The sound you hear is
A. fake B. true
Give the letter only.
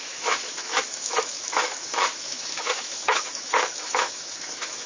A